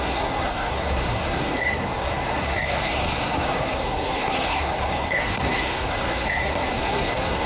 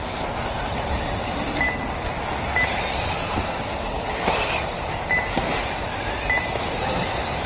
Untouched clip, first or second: second